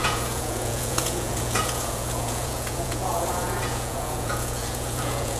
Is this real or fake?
fake